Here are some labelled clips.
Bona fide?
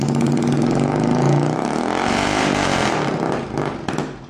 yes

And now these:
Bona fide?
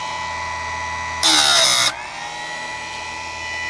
yes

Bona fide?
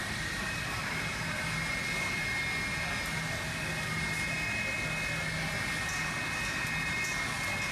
yes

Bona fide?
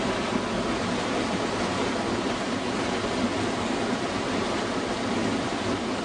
yes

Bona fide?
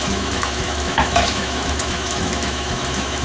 no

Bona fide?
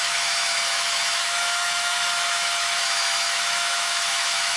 no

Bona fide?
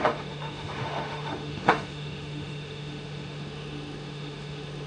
no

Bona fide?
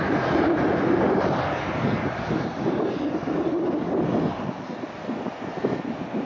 yes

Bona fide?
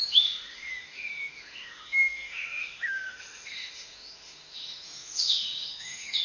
no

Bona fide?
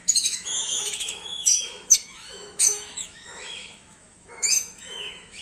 no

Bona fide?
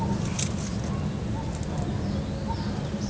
yes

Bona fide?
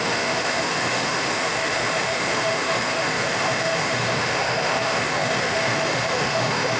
no